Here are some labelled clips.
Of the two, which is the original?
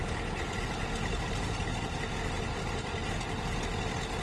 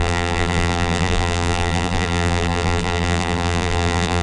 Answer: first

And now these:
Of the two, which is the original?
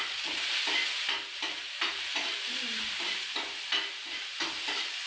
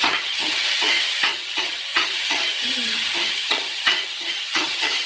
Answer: first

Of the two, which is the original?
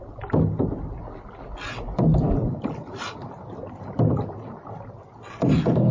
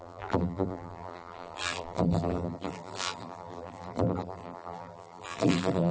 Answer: first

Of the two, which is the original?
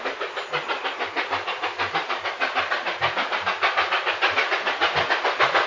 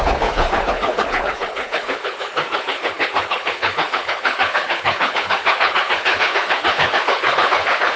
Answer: first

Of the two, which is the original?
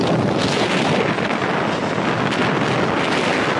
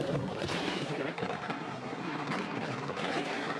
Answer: first